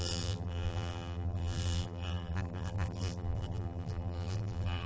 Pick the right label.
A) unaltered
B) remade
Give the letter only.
B